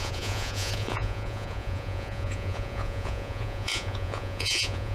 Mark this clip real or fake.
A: fake